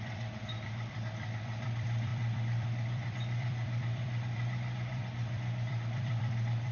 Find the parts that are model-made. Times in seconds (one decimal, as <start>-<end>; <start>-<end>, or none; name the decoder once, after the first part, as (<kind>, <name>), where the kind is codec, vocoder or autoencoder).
0.0-6.7 (vocoder, BigVGAN v2)